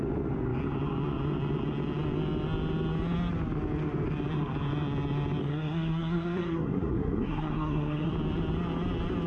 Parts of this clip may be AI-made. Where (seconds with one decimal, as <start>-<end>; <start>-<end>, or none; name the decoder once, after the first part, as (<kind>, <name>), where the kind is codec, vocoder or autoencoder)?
5.4-8.1 (codec, SNAC)